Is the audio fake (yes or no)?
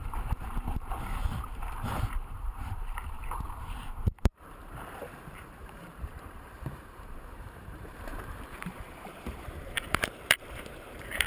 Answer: yes